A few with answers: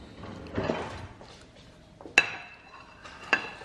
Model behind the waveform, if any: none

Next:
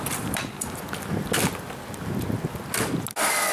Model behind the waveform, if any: none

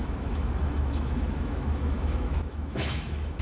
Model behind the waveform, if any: autoencoder, DAC-VAE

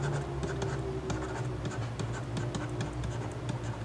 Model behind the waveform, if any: none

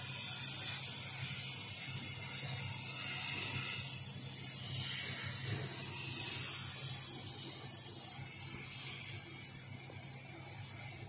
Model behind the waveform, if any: none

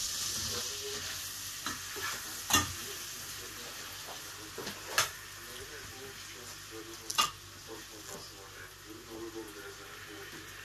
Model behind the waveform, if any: none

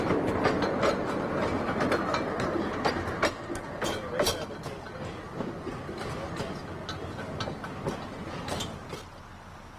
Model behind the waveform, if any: none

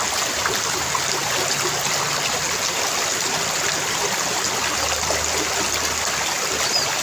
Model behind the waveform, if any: none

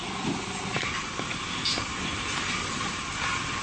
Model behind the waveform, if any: none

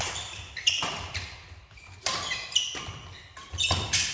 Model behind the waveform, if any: none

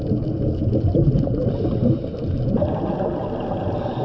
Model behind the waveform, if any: none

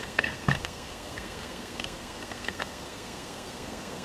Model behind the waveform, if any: codec, SNAC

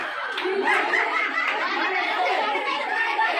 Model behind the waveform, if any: vocoder, BigVGAN v2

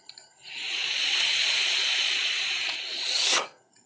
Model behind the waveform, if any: vocoder, Vocos